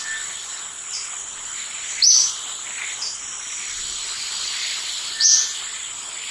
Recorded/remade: recorded